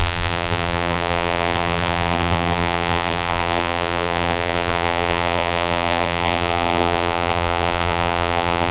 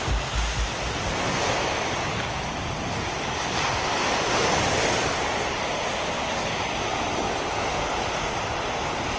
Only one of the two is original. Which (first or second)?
second